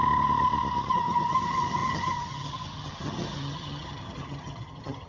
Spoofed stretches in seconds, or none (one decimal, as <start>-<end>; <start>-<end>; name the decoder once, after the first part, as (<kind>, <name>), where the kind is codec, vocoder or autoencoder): 0.9-5.1 (vocoder, HiFi-GAN)